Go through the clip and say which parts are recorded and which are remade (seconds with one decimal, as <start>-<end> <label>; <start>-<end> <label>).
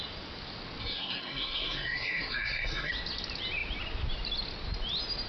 0.0-0.8 recorded; 0.8-2.9 remade; 2.9-5.3 recorded